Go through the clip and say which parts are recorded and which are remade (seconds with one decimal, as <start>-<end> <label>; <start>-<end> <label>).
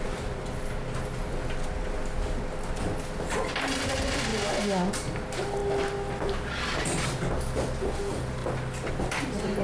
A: 0.0-9.6 recorded